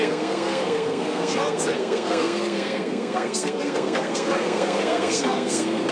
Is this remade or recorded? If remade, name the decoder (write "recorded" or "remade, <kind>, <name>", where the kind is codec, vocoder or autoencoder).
remade, codec, SNAC